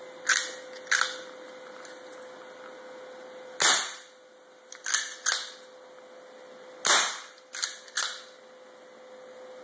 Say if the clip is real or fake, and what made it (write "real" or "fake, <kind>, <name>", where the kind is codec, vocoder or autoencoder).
real